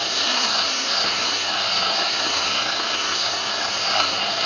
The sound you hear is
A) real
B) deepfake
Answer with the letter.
B